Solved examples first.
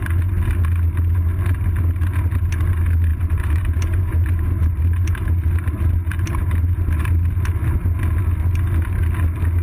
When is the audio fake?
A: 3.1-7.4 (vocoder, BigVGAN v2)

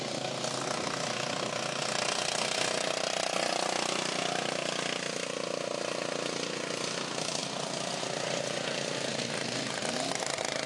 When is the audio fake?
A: 7.4-8.0 (vocoder, BigVGAN v2)

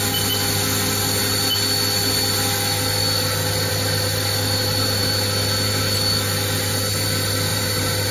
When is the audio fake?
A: 7.5-8.1 (vocoder, BigVGAN v2)